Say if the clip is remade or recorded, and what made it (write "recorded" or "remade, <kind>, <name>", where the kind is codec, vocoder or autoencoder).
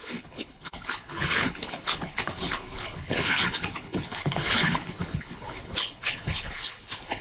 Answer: remade, codec, HILCodec